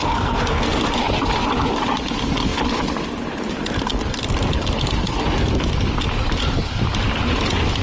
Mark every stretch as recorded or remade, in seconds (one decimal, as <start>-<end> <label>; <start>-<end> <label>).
0.0-0.8 remade; 0.8-7.8 recorded